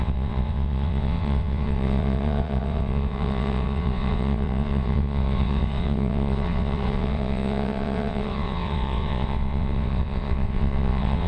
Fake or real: fake